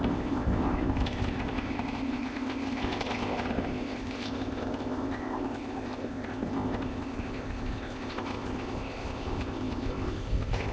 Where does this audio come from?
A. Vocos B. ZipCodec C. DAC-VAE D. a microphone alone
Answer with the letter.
B